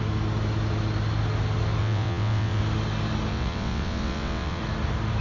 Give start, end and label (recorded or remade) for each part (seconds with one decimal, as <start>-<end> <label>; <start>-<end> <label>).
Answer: 0.0-1.8 recorded; 1.8-2.6 remade; 2.6-3.3 recorded; 3.3-4.6 remade; 4.6-5.2 recorded